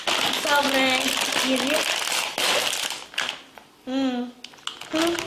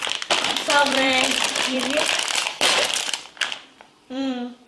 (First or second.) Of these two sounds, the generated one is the second